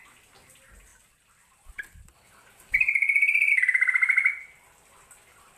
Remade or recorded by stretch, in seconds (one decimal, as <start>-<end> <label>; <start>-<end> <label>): 0.0-5.6 recorded